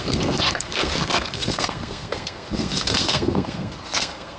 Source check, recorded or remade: remade